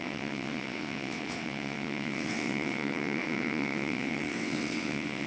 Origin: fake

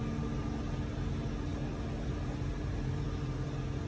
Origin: real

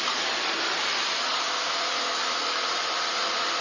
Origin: real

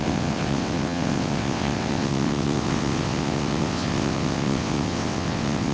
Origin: fake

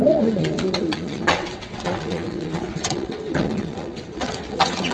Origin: fake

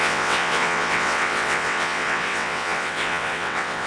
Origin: fake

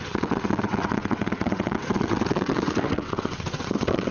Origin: fake